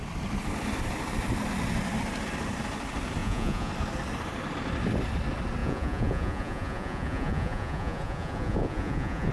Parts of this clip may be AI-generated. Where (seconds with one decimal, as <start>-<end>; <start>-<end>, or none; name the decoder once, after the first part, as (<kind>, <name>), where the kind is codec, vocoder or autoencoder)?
3.2-3.7 (vocoder, Vocos); 5.6-9.3